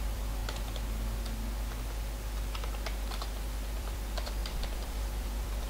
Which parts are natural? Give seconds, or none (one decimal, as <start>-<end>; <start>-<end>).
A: 0.4-3.8